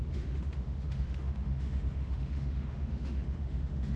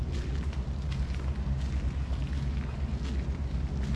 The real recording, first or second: second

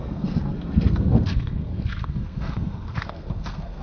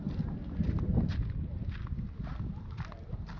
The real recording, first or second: second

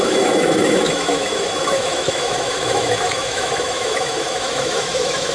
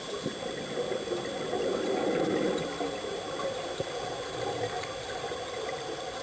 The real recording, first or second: second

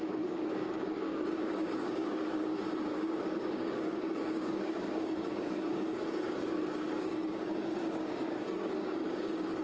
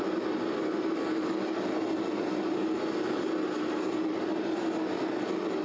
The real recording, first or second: second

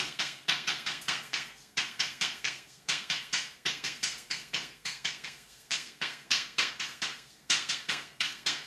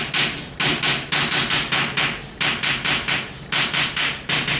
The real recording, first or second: second